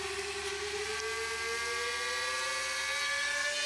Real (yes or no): yes